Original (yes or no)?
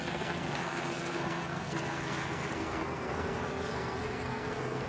no